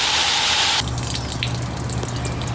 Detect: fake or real real